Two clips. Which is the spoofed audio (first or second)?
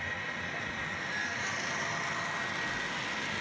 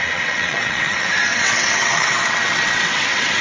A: second